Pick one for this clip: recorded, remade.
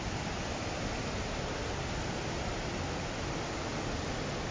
recorded